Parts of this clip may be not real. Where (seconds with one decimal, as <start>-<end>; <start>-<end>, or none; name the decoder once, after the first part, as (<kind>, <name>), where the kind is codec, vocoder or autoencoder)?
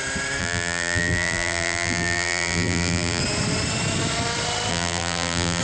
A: 0.4-3.2 (vocoder, BigVGAN v2); 4.7-5.6